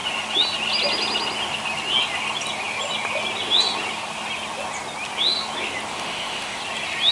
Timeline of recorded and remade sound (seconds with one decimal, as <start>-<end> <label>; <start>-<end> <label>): 0.0-5.9 recorded; 5.9-6.6 remade; 6.6-7.1 recorded